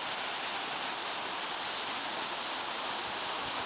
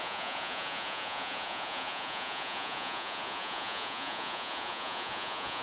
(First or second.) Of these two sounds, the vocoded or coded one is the second